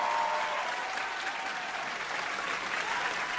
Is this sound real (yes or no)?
yes